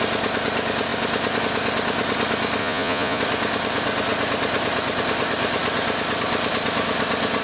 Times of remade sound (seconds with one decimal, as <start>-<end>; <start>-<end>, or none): 2.6-3.2